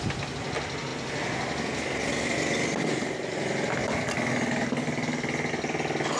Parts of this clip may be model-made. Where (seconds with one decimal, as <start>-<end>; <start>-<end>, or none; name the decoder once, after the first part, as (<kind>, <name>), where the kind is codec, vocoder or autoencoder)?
none